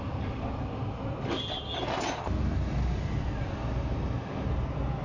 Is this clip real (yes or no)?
yes